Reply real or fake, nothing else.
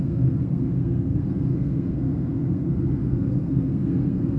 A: fake